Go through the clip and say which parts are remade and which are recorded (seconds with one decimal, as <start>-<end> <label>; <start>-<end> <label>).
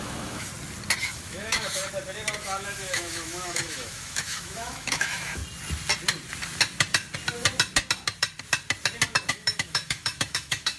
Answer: 0.0-0.5 remade; 0.5-1.0 recorded; 1.0-1.8 remade; 1.8-2.4 recorded; 2.4-5.4 remade; 5.4-9.3 recorded; 9.3-10.8 remade